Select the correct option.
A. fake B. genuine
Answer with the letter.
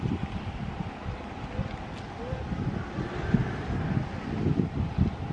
B